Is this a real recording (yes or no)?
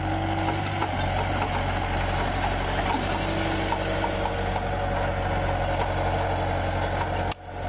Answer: yes